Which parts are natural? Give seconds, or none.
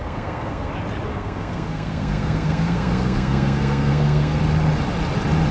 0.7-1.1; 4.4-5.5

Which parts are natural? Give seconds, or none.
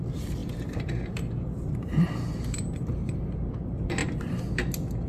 0.0-0.4; 3.5-4.0; 4.6-5.1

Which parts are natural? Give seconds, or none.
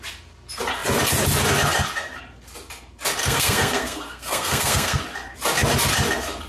0.0-3.2; 5.0-6.5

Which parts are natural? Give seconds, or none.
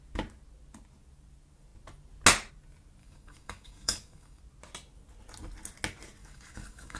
0.0-3.0; 4.4-6.2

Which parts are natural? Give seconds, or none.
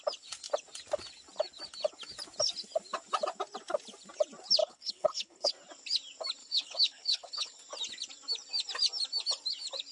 0.0-4.6; 5.5-6.4; 7.6-9.9